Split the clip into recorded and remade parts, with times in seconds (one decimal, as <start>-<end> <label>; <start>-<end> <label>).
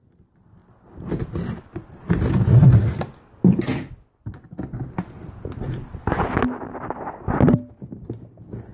0.0-8.7 recorded